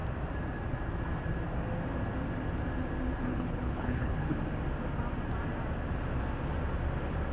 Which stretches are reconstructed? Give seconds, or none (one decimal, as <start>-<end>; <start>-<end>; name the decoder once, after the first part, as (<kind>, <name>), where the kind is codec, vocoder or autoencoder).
3.3-4.3 (codec, HILCodec)